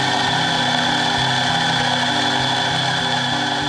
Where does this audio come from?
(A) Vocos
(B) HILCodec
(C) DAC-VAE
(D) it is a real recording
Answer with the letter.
D